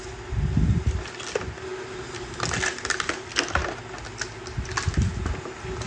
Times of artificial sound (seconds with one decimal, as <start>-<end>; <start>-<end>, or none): none